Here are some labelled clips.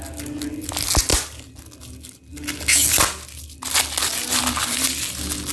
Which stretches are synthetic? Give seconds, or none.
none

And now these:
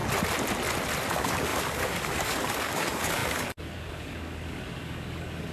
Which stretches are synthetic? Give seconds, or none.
1.1-5.5 (codec, DAC)

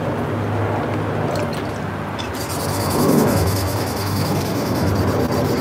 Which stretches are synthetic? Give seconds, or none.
2.7-4.9 (codec, DAC)